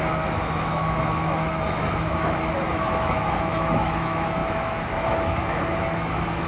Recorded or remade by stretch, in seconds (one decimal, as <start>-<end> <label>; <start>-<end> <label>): 0.0-6.5 remade